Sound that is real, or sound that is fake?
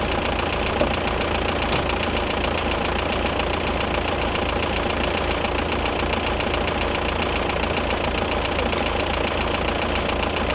real